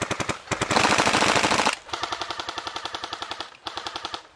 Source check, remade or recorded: recorded